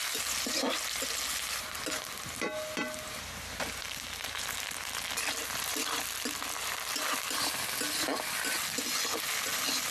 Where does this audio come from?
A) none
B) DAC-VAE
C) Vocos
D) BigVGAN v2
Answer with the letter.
A